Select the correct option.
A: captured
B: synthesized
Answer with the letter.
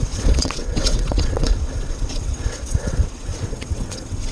B